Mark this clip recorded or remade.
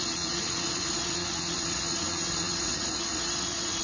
remade